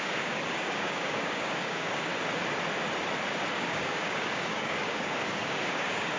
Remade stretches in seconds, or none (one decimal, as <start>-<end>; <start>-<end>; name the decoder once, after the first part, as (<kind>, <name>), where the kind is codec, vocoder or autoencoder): 0.0-2.1 (codec, DAC); 3.5-6.2

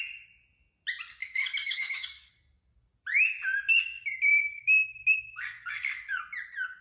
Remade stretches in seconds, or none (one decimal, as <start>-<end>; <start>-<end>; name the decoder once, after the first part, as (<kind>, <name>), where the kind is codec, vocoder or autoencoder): 1.6-2.3 (codec, DAC); 4.3-6.2

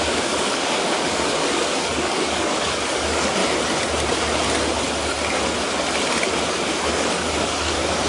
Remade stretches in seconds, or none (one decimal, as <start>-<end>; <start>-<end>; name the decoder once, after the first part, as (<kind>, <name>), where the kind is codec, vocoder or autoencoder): 0.0-3.4 (codec, DAC); 6.5-8.1

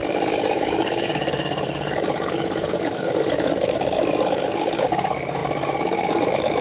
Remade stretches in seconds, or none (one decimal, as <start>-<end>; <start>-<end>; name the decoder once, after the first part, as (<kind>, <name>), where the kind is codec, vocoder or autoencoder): 0.0-6.6 (codec, DAC)

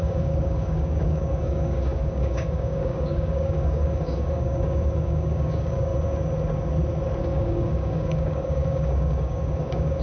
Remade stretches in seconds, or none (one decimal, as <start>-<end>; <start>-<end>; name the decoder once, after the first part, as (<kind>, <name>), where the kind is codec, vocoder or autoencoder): 0.0-5.9 (codec, DAC); 7.2-10.0

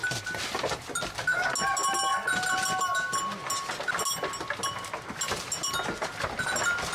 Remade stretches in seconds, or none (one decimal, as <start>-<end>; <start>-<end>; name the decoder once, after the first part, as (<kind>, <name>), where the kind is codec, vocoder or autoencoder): none

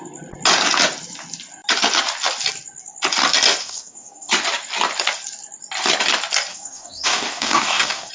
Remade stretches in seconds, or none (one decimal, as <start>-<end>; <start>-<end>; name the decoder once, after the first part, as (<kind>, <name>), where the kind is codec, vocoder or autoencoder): 3.6-4.3 (codec, DAC); 6.5-8.1

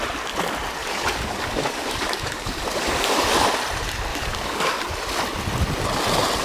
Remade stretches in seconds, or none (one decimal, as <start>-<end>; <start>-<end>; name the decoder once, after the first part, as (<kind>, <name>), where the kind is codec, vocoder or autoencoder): 0.8-3.3 (codec, DAC); 4.1-4.9